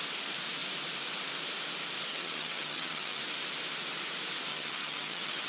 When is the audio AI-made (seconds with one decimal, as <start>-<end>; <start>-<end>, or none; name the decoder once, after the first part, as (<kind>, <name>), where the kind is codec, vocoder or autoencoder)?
2.1-3.2 (vocoder, HiFi-GAN); 4.5-5.5